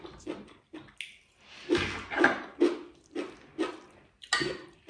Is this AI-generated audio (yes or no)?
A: no